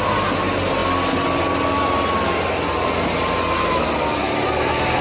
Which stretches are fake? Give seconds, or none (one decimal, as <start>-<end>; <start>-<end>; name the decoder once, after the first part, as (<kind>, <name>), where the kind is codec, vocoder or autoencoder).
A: none